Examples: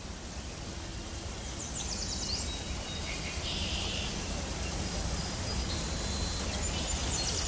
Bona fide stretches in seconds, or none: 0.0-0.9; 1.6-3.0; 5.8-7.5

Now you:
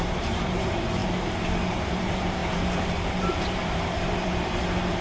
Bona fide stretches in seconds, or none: none